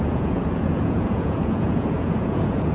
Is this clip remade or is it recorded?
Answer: remade